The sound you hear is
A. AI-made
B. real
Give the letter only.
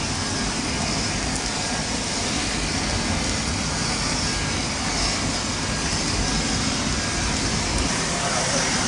B